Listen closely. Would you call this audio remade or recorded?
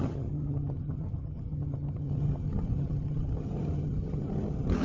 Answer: remade